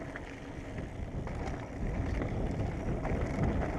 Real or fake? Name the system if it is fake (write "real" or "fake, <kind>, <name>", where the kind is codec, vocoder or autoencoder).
real